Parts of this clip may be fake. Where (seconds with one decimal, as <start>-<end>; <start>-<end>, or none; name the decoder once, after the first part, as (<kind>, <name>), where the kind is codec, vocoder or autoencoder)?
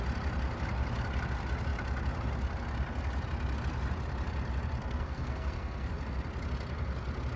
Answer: 4.8-6.0 (codec, SNAC)